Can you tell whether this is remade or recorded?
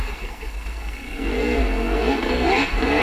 remade